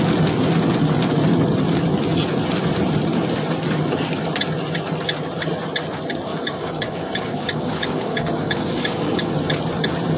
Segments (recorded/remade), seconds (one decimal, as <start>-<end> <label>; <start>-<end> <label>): 0.0-6.3 recorded; 6.3-9.3 remade; 9.3-10.2 recorded